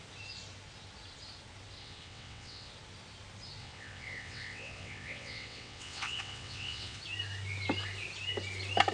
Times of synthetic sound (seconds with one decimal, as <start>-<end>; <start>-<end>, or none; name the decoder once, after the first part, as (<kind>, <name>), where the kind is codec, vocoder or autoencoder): 1.8-2.7 (vocoder, WaveNeXt); 3.6-7.0